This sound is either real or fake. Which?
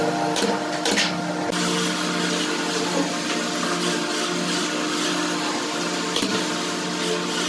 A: real